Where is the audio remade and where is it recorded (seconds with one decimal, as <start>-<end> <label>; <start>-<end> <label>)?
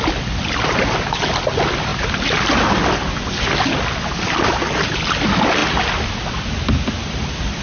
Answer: 0.0-7.6 recorded